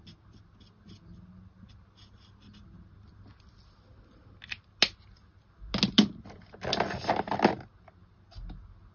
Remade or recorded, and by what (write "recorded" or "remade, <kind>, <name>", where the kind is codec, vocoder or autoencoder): recorded